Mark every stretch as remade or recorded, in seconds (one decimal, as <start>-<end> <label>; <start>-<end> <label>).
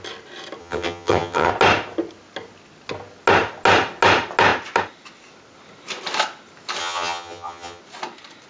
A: 0.0-0.6 recorded; 0.6-1.5 remade; 1.5-6.8 recorded; 6.8-7.8 remade; 7.8-8.5 recorded